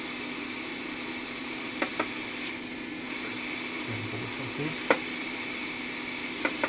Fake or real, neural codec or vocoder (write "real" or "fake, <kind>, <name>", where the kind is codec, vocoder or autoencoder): real